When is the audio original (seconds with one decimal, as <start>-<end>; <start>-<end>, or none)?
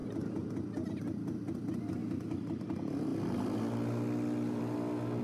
0.0-5.2